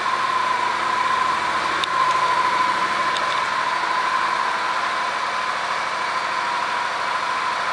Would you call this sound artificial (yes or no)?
no